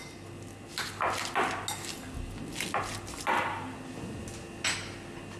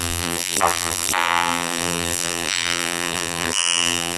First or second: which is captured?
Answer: first